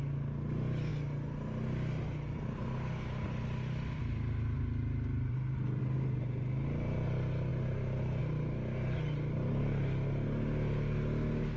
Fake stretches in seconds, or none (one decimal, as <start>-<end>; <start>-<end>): 7.5-8.2

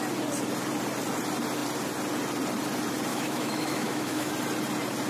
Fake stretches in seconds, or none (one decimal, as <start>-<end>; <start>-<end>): 3.1-4.3

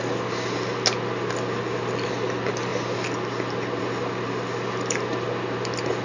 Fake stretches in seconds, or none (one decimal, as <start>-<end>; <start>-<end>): none

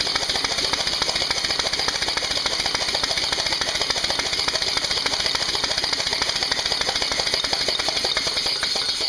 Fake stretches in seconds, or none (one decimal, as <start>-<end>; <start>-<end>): 0.0-6.4; 7.8-9.1

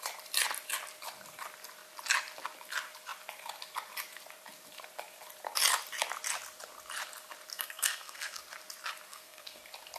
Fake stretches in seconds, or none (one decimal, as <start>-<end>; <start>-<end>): 7.5-8.4; 9.1-9.6

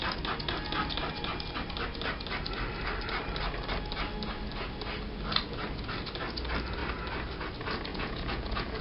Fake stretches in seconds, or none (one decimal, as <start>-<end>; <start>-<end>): 7.9-8.8

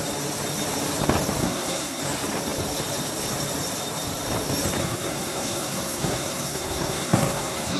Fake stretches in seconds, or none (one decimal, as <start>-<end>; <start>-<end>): 1.4-2.0; 4.8-7.8